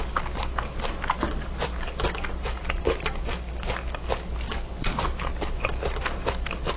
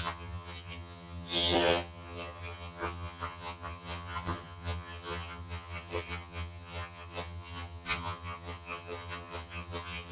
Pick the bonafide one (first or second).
first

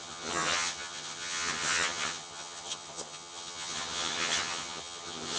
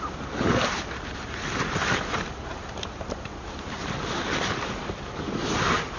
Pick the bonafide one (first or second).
second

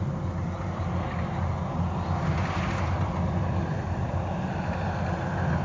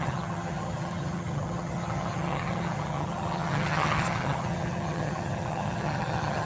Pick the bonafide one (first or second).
first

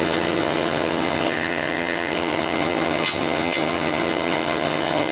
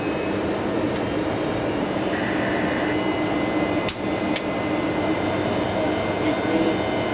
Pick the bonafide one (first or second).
second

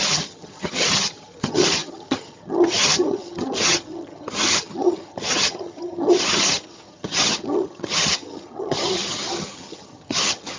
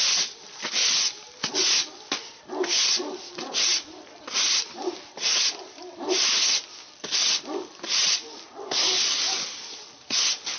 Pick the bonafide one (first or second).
second